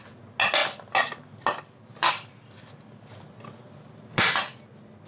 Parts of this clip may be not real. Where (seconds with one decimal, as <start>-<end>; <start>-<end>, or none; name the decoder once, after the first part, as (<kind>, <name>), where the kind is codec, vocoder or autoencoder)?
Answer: none

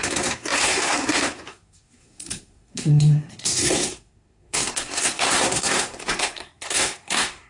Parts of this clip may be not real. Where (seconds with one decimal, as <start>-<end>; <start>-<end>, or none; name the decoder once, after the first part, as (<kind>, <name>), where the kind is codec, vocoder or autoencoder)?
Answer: 0.0-7.5 (codec, SNAC)

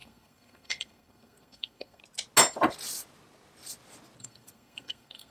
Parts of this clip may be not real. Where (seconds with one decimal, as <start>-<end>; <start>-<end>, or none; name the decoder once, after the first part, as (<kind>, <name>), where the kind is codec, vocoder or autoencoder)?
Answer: 0.0-2.0 (codec, SNAC); 4.2-5.3

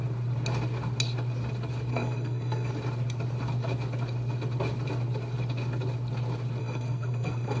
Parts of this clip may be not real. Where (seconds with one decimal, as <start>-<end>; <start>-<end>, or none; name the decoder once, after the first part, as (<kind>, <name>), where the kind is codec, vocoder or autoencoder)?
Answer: 1.9-2.7 (codec, SNAC); 6.6-7.6

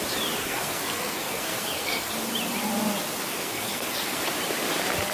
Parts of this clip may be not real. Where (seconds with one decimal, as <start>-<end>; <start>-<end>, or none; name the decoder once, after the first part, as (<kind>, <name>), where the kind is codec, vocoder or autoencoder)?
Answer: 0.4-2.1 (codec, SNAC); 3.2-4.2

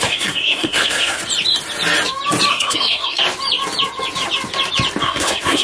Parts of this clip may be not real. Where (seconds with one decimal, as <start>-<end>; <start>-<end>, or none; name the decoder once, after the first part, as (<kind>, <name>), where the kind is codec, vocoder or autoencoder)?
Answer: 0.0-1.2 (codec, SNAC); 2.5-3.2; 5.0-5.6

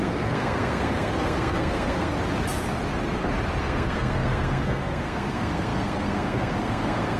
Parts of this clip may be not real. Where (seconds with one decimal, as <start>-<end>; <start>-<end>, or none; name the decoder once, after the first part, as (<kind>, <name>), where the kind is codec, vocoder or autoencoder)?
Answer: 0.0-2.1 (codec, SNAC); 3.6-7.2

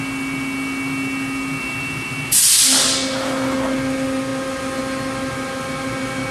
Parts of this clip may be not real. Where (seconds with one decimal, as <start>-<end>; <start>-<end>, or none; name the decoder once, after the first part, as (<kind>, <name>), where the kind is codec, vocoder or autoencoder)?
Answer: none